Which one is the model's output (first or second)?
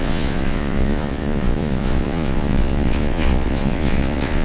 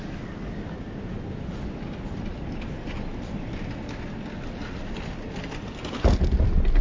first